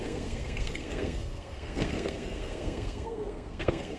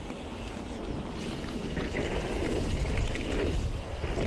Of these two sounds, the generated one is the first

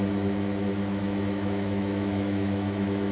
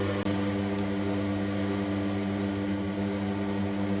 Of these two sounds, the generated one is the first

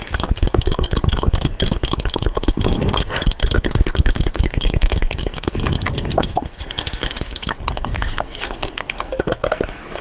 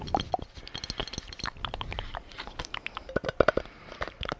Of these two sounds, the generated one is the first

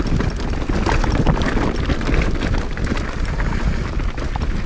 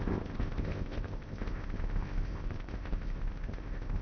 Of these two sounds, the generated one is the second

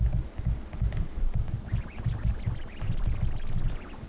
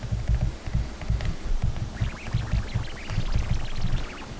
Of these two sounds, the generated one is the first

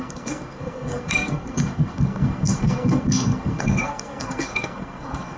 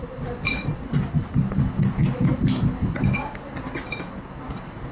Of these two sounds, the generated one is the first